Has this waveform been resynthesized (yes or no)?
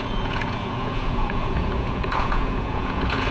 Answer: yes